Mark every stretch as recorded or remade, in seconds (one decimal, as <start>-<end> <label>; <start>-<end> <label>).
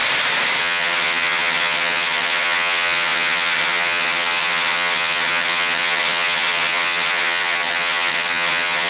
0.0-0.6 recorded; 0.6-8.9 remade